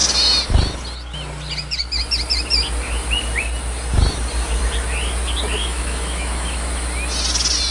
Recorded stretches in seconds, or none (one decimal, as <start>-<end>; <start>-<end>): 0.0-5.6; 6.7-7.7

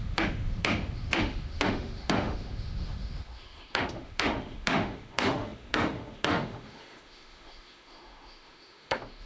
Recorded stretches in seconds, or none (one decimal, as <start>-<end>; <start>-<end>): none

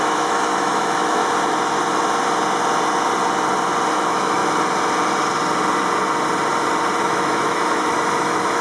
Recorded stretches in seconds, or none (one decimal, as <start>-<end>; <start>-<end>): 1.2-3.9; 4.4-7.0